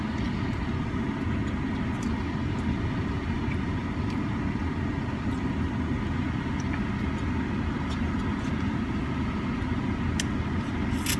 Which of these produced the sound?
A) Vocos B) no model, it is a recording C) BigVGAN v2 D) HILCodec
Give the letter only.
B